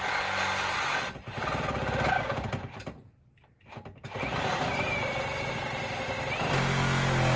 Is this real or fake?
real